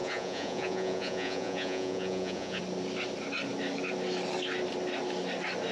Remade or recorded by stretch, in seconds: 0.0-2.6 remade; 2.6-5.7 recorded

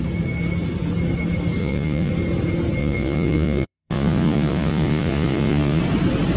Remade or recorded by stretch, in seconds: 0.0-1.6 recorded; 1.6-2.1 remade; 2.1-2.8 recorded; 2.8-5.8 remade; 5.8-6.4 recorded

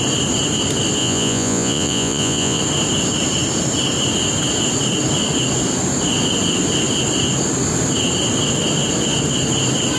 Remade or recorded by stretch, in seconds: 0.0-1.0 recorded; 1.0-2.6 remade; 2.6-10.0 recorded

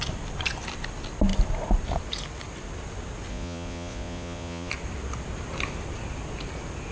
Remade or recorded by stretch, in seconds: 0.0-3.3 recorded; 3.3-4.7 remade; 4.7-6.9 recorded

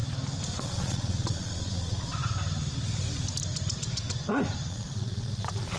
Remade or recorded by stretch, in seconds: 0.0-0.6 recorded; 0.6-2.1 remade; 2.1-4.7 recorded; 4.7-5.8 remade

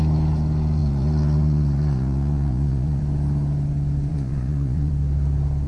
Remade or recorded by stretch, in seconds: 0.0-0.8 recorded; 0.8-3.0 remade; 3.0-4.1 recorded; 4.1-4.9 remade; 4.9-5.7 recorded